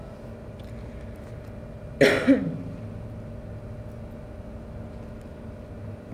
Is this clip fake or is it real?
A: real